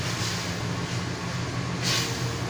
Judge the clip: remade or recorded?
recorded